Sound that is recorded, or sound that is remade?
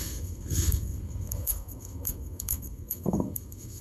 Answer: remade